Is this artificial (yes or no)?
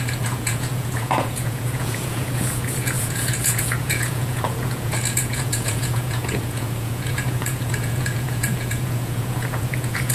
yes